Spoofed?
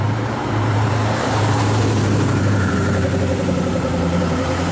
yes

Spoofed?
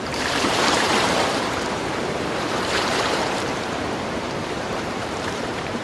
yes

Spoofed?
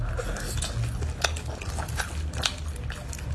no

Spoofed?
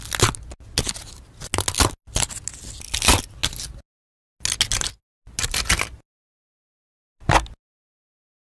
no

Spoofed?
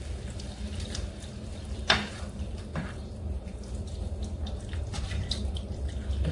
yes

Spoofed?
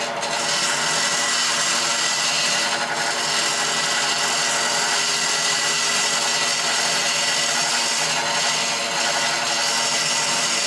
no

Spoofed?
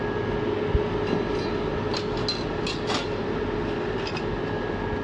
no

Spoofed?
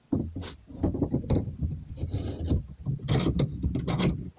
no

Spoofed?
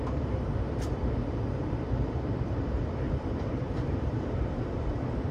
yes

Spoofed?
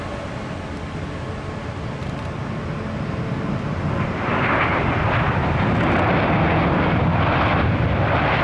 no